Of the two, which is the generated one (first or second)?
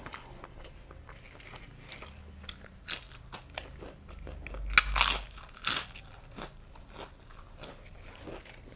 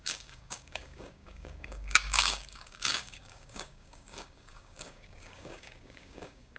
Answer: second